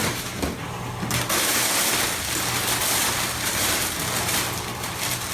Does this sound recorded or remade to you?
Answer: recorded